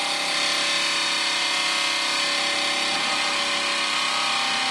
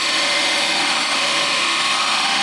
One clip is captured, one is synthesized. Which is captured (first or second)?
first